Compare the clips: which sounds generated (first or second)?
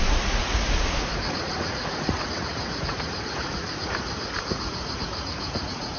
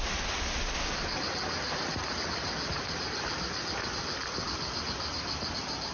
first